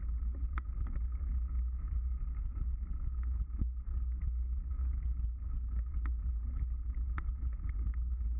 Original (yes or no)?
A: yes